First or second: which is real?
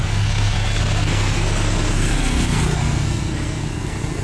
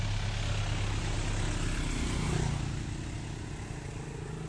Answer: second